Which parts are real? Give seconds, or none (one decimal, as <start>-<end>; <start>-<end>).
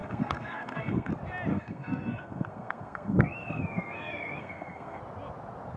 1.1-1.5; 5.0-5.8